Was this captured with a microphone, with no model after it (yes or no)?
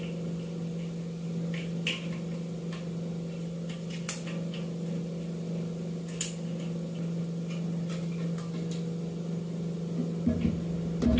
yes